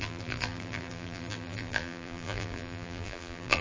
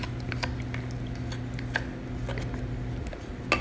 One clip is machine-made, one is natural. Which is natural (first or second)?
second